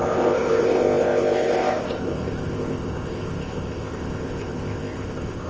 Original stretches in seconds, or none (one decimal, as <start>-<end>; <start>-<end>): none